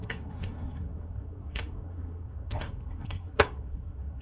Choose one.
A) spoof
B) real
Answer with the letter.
A